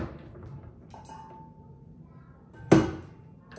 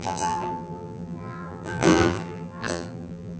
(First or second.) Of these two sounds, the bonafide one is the first